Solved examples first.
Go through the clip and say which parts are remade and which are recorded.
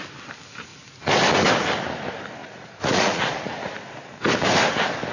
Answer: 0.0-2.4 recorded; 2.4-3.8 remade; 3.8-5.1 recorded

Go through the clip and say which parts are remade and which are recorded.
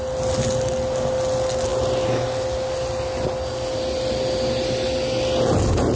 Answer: 0.0-6.0 recorded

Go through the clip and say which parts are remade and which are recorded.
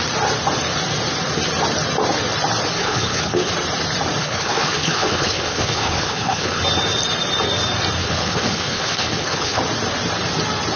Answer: 0.0-2.8 recorded; 2.8-3.5 remade; 3.5-4.2 recorded; 4.2-6.6 remade; 6.6-8.0 recorded; 8.0-9.6 remade; 9.6-10.8 recorded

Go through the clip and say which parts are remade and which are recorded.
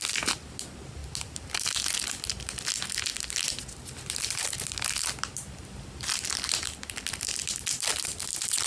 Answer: 0.0-8.7 recorded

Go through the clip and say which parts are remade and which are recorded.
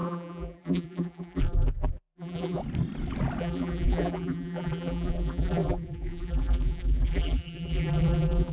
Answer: 0.0-2.6 remade; 2.6-3.4 recorded; 3.4-8.5 remade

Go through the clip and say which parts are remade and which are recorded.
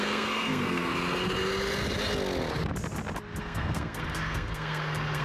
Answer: 0.0-0.9 remade; 0.9-3.4 recorded; 3.4-5.2 remade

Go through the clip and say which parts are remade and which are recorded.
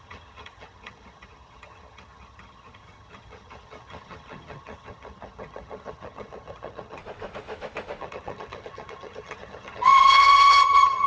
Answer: 0.0-7.0 remade; 7.0-8.0 recorded; 8.0-11.1 remade